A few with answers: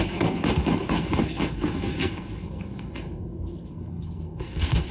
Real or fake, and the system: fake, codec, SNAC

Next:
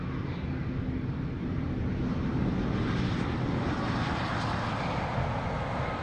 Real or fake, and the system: real